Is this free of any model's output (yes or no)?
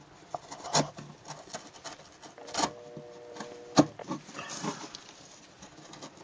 yes